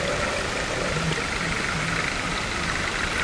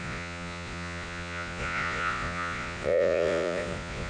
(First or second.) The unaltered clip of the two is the first